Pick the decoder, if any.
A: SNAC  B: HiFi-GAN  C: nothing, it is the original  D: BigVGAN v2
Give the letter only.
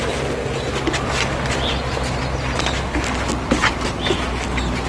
C